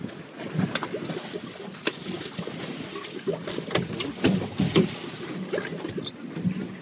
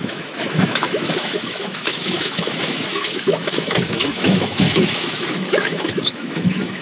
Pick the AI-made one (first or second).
second